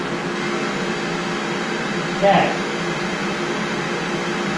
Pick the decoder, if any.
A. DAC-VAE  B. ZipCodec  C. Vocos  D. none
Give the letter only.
D